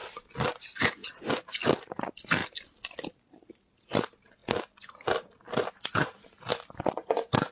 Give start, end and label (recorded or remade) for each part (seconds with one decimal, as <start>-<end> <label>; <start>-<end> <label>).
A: 0.0-7.5 recorded